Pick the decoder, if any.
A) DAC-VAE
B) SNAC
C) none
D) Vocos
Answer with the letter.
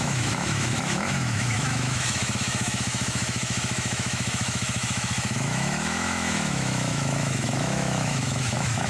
A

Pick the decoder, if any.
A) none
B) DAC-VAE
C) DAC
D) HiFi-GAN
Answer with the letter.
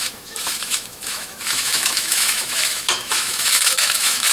B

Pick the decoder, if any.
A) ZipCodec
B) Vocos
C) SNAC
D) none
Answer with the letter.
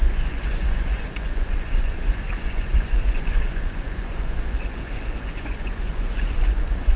B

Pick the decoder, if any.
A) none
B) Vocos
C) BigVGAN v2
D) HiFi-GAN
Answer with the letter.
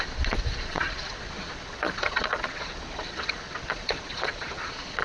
B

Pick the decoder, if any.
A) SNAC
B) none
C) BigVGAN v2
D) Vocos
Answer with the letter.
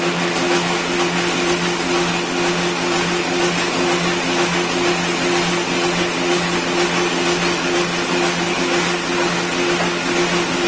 B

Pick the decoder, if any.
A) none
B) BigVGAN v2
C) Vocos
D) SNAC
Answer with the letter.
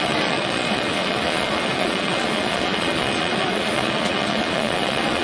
C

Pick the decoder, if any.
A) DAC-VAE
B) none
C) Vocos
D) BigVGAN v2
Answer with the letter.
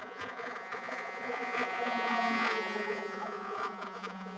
C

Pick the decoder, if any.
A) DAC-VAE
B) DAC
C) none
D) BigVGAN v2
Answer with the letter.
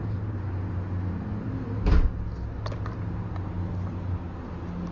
C